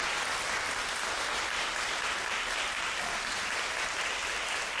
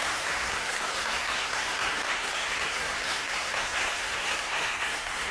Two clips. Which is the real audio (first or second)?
first